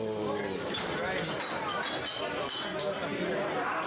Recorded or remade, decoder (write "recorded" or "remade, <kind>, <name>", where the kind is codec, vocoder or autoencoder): recorded